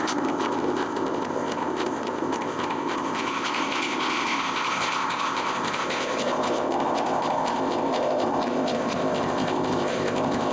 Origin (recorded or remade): remade